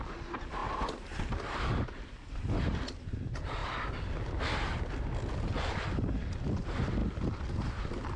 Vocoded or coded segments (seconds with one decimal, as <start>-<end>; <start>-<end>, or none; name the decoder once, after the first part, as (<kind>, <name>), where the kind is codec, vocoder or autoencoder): none